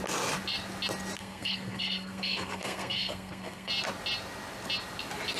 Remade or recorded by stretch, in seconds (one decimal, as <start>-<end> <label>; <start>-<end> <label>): 0.0-1.2 recorded; 1.2-3.7 remade; 3.7-5.4 recorded